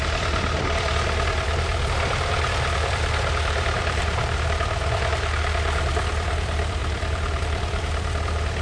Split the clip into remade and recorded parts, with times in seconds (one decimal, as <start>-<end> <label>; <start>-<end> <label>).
0.0-8.6 remade